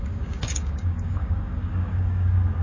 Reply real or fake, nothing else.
fake